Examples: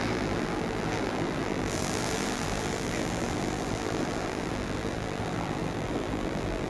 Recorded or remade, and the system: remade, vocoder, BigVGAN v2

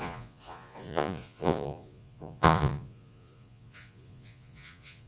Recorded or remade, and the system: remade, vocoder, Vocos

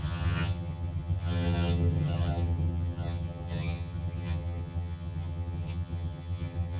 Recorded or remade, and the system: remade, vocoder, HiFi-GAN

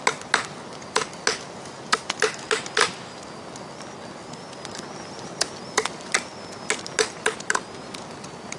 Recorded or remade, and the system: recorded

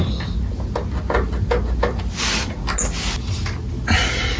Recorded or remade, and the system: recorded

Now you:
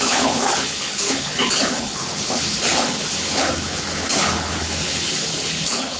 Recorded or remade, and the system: remade, codec, HILCodec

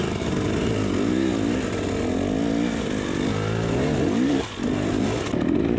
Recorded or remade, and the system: recorded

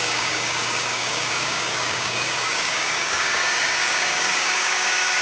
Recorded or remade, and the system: remade, codec, DAC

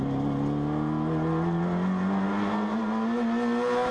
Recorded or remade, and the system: recorded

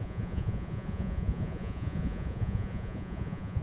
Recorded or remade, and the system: remade, vocoder, Vocos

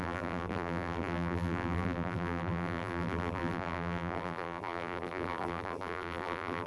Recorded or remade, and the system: remade, vocoder, BigVGAN v2